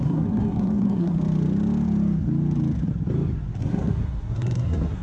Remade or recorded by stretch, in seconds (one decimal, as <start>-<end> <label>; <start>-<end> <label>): 0.0-1.2 remade; 1.2-3.6 recorded; 3.6-5.0 remade